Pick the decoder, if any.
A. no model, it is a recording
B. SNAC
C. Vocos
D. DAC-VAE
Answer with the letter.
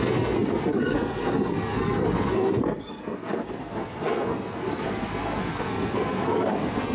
B